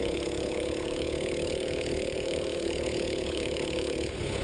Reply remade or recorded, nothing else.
remade